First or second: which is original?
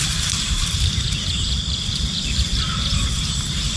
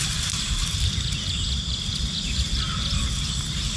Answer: second